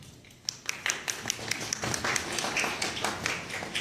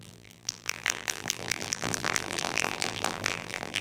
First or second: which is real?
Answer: first